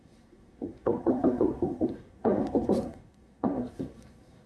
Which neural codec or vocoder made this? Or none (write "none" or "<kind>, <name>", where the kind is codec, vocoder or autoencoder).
codec, SNAC